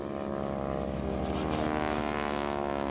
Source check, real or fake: real